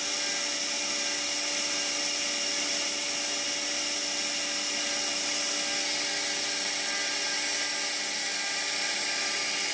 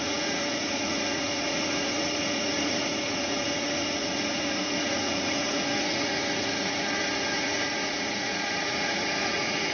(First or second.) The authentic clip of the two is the first